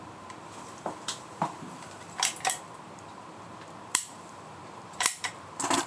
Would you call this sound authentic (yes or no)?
no